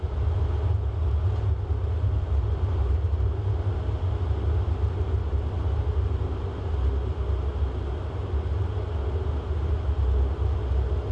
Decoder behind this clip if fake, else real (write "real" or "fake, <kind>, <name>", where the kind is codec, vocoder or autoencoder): real